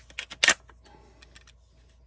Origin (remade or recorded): recorded